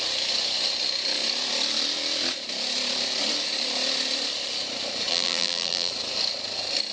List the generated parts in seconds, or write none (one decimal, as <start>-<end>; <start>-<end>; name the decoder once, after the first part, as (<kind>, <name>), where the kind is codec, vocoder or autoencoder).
5.1-5.9 (vocoder, BigVGAN v2)